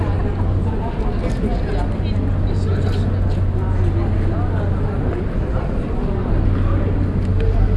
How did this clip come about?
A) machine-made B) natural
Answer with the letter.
B